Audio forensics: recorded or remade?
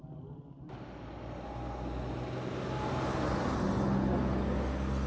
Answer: recorded